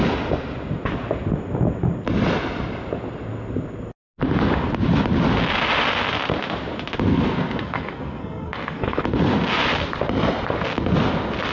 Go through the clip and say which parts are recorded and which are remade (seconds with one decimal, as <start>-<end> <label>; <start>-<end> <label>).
0.0-7.1 recorded; 7.1-9.0 remade; 9.0-11.5 recorded

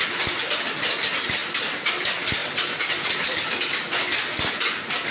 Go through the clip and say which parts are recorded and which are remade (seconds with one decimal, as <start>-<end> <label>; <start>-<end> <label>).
0.0-2.4 recorded; 2.4-4.5 remade; 4.5-5.1 recorded

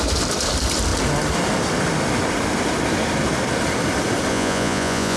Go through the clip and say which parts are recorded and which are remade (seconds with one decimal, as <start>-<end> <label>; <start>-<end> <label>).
0.0-4.3 recorded; 4.3-5.2 remade

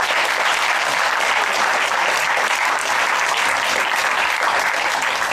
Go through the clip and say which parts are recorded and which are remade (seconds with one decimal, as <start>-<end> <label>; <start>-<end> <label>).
0.0-2.8 remade; 2.8-3.8 recorded; 3.8-5.3 remade

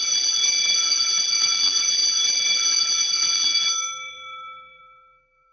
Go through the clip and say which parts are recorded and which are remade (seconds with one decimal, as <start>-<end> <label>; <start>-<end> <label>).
0.0-5.5 remade

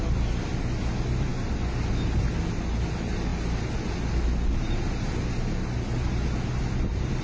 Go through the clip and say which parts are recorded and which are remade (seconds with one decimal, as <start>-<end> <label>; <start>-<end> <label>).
0.0-7.2 recorded

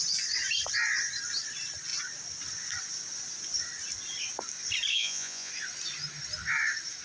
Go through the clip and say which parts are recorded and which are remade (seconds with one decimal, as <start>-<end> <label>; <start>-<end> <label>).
0.0-4.9 recorded; 4.9-5.5 remade; 5.5-7.0 recorded

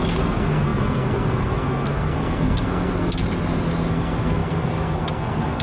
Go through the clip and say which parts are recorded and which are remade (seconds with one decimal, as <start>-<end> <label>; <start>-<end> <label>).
0.0-3.2 remade; 3.2-3.9 recorded; 3.9-5.6 remade